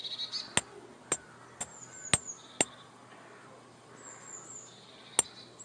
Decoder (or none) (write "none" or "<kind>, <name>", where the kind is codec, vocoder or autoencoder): none